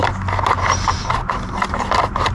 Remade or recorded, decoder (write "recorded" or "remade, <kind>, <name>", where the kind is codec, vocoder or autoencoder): recorded